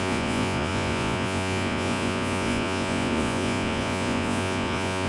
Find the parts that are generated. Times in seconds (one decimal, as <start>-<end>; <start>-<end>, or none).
0.0-5.1